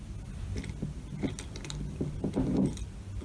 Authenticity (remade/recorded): recorded